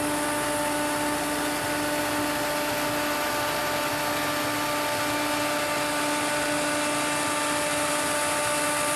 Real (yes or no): yes